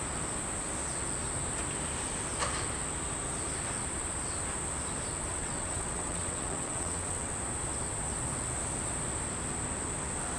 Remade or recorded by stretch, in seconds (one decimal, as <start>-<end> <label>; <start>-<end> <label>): 0.0-5.3 recorded; 5.3-7.3 remade; 7.3-10.4 recorded